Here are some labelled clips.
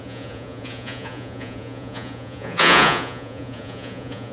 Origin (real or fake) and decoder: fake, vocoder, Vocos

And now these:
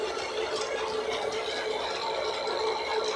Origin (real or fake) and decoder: real